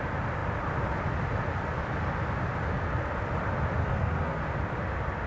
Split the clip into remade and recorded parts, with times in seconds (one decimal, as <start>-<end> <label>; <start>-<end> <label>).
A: 0.0-3.8 recorded; 3.8-4.4 remade; 4.4-5.3 recorded